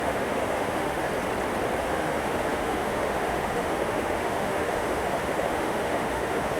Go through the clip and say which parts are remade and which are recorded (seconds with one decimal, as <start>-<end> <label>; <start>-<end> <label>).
0.0-1.1 remade; 1.1-1.8 recorded; 1.8-6.6 remade